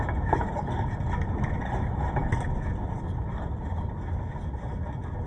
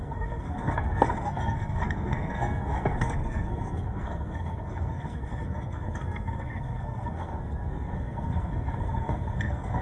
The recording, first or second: first